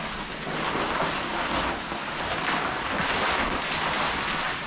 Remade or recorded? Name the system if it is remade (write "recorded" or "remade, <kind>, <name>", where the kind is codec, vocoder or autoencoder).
recorded